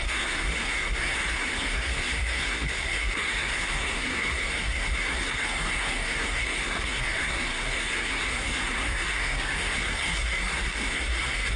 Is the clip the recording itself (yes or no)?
no